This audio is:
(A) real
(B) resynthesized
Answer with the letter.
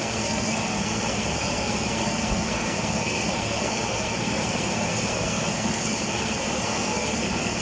B